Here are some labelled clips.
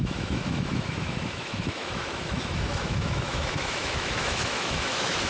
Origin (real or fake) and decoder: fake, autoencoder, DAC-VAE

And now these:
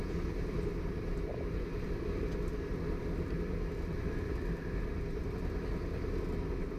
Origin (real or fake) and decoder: real